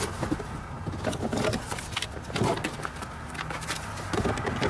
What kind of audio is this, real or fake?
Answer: real